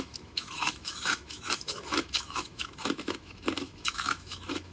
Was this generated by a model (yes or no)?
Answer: yes